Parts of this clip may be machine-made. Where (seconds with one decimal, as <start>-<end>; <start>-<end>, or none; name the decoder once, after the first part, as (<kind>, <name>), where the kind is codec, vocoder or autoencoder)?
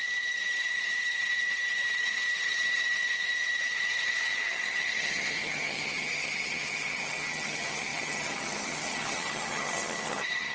0.0-10.5 (vocoder, HiFi-GAN)